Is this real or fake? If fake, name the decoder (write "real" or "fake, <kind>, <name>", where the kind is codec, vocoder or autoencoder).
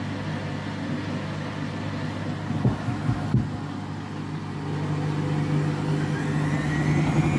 real